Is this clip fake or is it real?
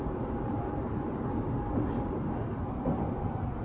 real